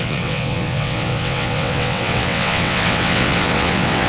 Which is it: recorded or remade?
remade